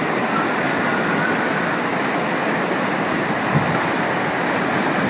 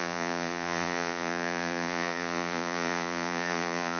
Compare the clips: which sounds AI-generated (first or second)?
second